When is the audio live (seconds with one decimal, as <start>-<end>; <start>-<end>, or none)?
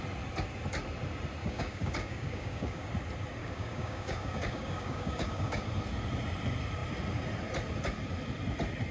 0.0-1.4; 2.9-3.4; 5.7-8.9